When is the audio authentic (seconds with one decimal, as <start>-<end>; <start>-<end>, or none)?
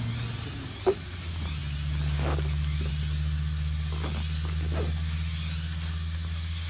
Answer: 0.0-6.7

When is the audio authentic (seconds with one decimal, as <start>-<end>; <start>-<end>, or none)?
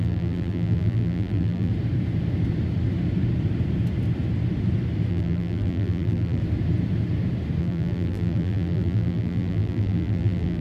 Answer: 1.7-5.1; 6.4-7.6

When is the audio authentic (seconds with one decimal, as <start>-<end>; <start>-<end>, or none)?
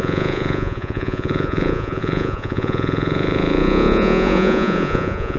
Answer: none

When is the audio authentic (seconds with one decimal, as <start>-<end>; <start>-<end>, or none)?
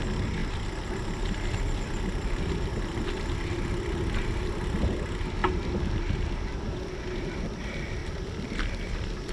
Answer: 0.0-0.4; 3.0-8.0; 8.7-9.3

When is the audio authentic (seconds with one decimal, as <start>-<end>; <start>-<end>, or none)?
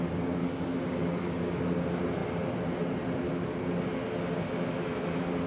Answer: 0.0-0.4; 1.6-5.5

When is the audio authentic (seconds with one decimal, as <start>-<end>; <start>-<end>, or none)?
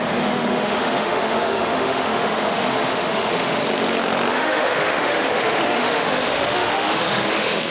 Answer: 3.6-4.3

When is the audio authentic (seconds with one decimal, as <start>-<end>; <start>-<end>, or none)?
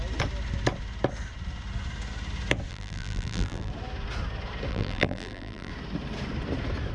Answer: 0.0-2.7; 3.7-4.7; 5.7-6.9